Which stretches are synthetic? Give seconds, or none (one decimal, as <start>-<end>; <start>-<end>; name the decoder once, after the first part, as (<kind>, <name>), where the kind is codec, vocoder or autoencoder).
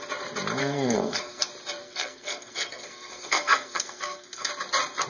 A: 0.6-1.4 (codec, SNAC); 1.8-4.5